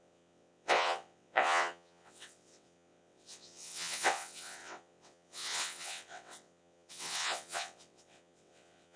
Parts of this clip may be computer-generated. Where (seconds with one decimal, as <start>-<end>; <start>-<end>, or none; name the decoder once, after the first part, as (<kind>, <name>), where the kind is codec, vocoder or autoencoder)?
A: 0.0-9.0 (vocoder, WaveNeXt)